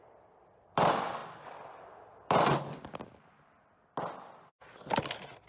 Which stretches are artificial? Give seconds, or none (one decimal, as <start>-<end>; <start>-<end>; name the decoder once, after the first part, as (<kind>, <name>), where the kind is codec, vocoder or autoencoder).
none